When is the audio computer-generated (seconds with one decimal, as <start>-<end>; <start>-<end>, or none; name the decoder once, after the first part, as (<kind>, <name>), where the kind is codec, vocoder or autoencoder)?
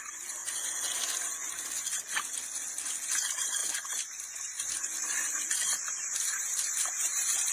3.6-7.5 (vocoder, BigVGAN v2)